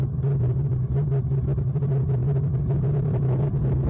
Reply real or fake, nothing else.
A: fake